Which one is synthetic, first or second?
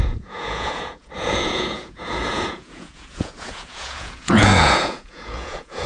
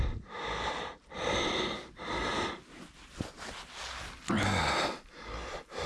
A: first